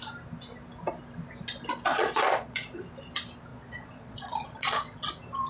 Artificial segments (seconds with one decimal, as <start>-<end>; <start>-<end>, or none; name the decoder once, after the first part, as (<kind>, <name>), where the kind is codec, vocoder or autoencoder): 1.9-2.8 (vocoder, Vocos); 3.5-5.1